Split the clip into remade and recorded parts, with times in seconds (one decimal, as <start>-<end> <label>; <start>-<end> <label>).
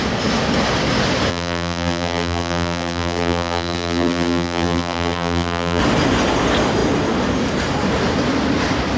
0.0-1.3 recorded; 1.3-5.8 remade; 5.8-9.0 recorded